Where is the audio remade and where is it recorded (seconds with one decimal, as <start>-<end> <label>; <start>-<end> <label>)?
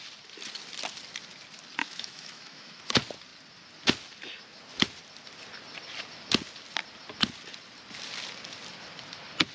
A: 0.0-1.8 recorded; 1.8-2.8 remade; 2.8-9.5 recorded